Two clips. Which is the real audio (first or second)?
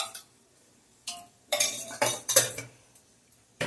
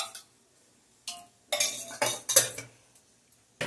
second